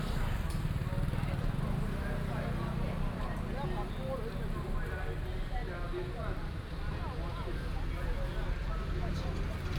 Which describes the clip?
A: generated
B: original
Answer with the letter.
B